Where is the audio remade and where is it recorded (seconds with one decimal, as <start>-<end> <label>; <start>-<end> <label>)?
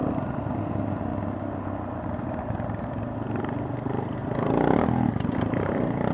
0.0-6.1 recorded